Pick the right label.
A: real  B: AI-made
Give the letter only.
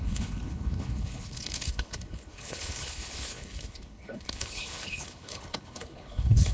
B